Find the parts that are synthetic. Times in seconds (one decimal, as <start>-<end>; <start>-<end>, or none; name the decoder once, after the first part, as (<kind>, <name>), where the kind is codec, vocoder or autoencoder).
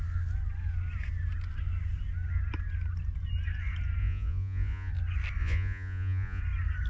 4.0-4.9 (vocoder, Vocos); 5.4-6.4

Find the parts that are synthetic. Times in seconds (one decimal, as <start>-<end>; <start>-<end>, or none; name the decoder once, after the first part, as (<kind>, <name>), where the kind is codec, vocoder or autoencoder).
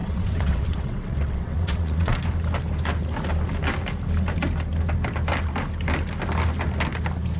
0.0-2.2 (vocoder, WaveNeXt)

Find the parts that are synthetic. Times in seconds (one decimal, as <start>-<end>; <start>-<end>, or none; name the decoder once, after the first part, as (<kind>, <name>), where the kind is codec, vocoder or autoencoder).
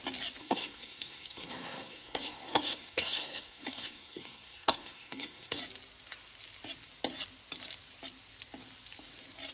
0.4-5.6 (codec, SNAC)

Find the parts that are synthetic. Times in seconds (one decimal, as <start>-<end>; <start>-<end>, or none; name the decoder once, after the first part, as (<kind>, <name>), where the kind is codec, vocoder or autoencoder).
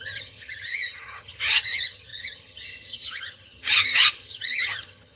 0.0-5.2 (vocoder, HiFi-GAN)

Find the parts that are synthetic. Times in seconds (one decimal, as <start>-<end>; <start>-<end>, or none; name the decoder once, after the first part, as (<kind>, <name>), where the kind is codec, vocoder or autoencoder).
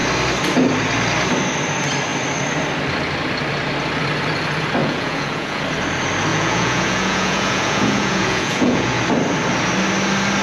4.8-5.6 (vocoder, Vocos); 6.3-9.0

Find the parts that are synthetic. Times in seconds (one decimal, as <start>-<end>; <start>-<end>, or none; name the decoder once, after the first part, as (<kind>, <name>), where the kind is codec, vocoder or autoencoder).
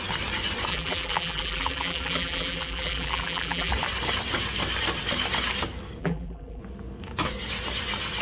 0.7-3.7 (vocoder, BigVGAN v2); 6.0-6.6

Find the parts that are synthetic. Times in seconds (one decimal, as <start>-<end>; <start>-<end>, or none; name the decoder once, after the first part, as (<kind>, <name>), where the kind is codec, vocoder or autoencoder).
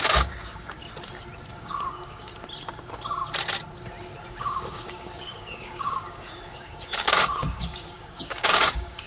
0.0-0.8 (codec, DAC); 1.5-2.3; 4.3-9.1